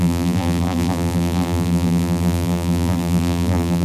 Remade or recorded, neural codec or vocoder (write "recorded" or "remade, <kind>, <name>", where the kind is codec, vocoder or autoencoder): remade, vocoder, BigVGAN v2